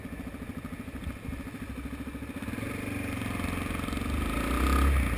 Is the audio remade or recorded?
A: recorded